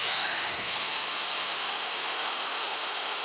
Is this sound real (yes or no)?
no